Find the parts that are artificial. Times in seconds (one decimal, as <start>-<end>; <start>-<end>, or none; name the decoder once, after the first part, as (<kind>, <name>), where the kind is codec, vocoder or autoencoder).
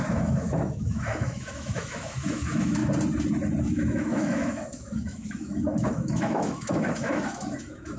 0.0-2.8 (autoencoder, DAC-VAE); 3.6-8.0